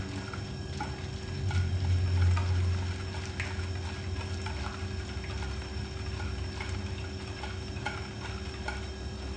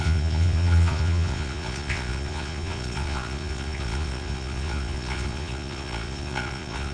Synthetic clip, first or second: second